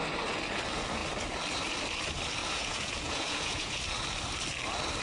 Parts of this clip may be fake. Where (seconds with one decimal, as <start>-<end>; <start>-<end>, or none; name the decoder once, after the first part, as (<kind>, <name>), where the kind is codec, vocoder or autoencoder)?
2.4-3.8 (vocoder, Vocos)